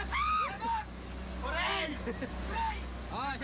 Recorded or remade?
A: recorded